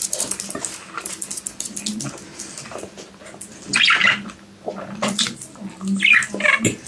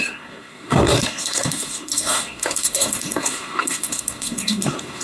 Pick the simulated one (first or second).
second